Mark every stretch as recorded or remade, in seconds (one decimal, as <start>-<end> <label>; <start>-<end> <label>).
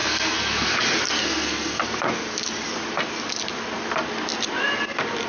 0.0-0.7 remade; 0.7-1.2 recorded; 1.2-1.8 remade; 1.8-5.3 recorded